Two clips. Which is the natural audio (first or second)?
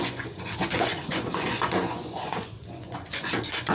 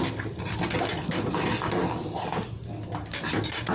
second